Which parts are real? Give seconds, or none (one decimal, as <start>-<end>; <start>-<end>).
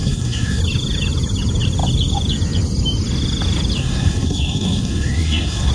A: 0.6-3.8